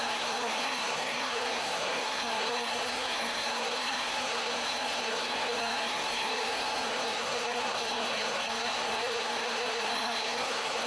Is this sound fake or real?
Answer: fake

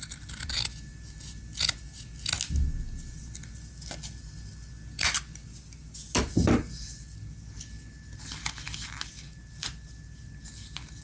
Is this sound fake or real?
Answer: real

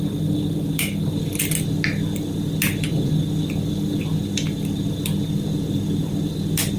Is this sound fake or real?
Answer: real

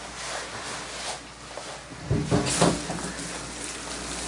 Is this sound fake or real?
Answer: real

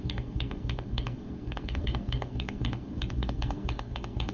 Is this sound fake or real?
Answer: fake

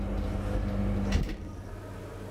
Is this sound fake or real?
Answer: real